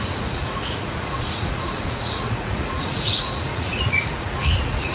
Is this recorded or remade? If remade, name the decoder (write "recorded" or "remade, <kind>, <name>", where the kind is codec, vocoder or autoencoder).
remade, vocoder, Vocos